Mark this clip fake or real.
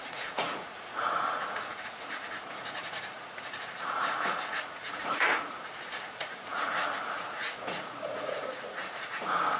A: fake